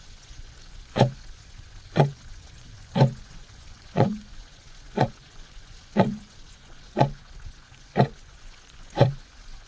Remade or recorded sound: remade